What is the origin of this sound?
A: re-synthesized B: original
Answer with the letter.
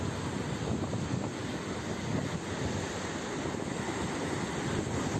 B